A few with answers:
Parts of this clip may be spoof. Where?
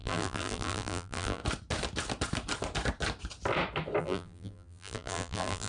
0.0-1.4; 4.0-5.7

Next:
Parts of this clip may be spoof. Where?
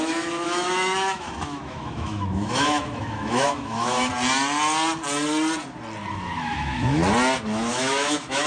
0.0-4.1; 6.1-7.0; 7.7-8.5